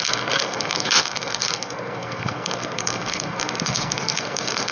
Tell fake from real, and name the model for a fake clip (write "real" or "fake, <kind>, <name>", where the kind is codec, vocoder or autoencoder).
fake, codec, SNAC